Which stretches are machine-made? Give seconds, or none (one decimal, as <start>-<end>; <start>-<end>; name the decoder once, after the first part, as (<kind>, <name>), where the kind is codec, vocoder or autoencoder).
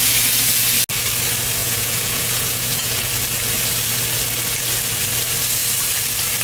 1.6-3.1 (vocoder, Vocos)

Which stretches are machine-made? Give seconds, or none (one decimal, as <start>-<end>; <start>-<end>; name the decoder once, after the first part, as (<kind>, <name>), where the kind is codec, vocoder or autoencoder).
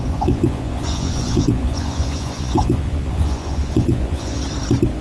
0.0-4.4 (vocoder, Vocos)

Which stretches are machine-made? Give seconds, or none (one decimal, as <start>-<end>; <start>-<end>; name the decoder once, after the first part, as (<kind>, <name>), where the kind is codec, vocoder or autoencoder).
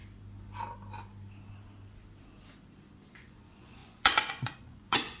3.1-5.2 (vocoder, Vocos)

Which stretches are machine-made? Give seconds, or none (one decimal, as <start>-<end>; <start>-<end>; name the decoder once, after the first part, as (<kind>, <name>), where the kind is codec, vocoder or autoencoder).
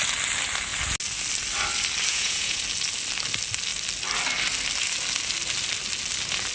2.1-2.6 (vocoder, Vocos)